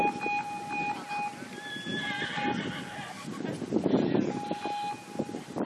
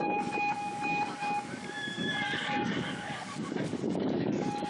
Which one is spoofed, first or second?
second